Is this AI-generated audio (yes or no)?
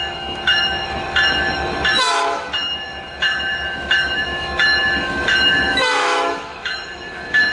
yes